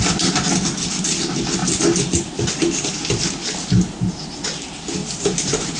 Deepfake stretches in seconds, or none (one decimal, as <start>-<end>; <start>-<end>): 5.0-5.8